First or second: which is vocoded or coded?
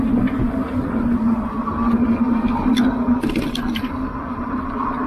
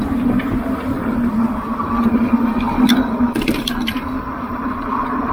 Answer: second